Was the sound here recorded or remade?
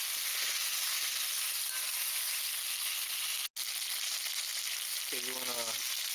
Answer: recorded